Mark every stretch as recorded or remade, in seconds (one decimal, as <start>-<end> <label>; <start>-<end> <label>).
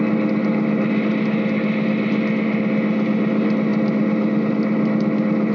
0.0-5.5 recorded